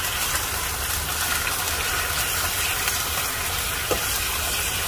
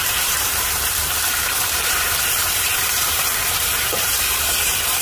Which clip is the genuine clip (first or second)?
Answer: first